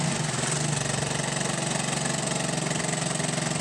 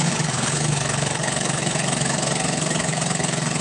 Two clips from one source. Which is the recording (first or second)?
first